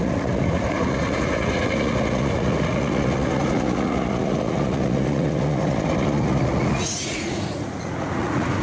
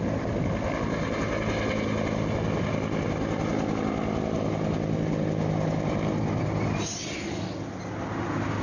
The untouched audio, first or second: second